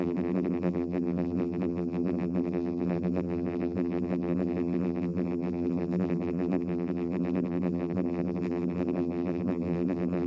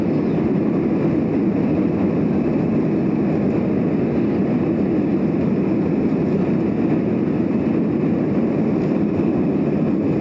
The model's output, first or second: first